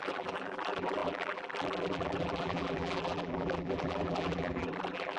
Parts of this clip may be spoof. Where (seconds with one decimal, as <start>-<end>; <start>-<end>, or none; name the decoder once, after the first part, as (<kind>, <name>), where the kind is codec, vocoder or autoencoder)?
0.0-5.2 (vocoder, BigVGAN v2)